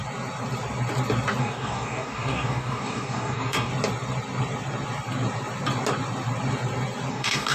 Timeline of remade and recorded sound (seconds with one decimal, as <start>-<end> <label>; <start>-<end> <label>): 0.0-1.4 recorded; 1.4-3.7 remade; 3.7-7.1 recorded; 7.1-7.5 remade